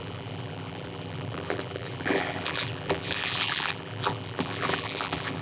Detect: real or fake fake